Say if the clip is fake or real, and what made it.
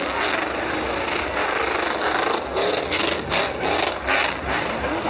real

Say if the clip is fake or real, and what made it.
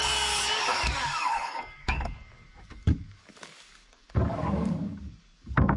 fake, codec, DAC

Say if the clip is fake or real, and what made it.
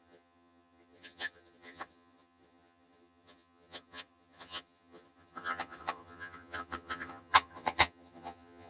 fake, vocoder, HiFi-GAN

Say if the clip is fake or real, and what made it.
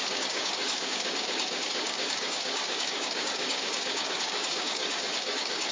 fake, codec, DAC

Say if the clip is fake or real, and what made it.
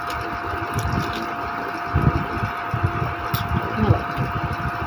real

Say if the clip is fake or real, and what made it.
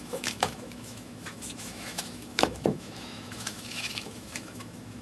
fake, autoencoder, DAC-VAE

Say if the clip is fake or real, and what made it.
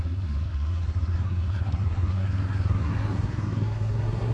fake, codec, SNAC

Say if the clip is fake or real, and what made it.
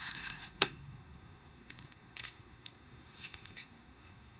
fake, codec, SNAC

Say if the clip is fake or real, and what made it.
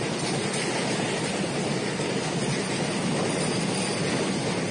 real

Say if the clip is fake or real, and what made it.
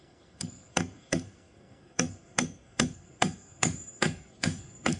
fake, codec, SNAC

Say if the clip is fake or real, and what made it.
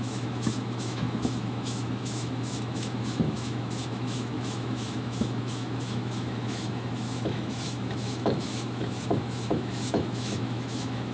fake, autoencoder, DAC-VAE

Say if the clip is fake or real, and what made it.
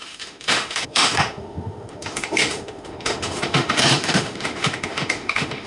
fake, autoencoder, DAC-VAE